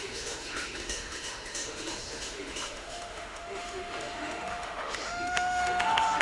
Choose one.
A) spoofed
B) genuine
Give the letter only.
A